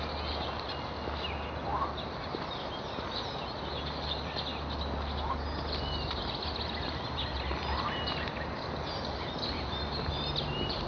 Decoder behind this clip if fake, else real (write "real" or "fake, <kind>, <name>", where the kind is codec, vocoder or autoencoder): real